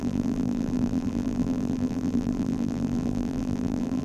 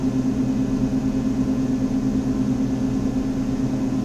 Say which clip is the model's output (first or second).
first